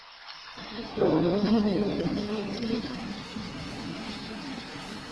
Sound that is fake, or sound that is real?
fake